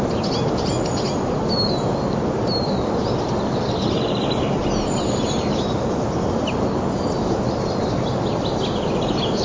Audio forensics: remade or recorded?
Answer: recorded